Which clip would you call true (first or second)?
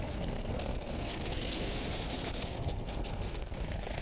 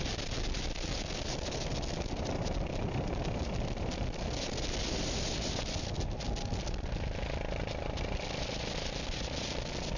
second